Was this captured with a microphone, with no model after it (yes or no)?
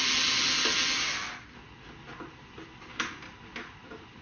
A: yes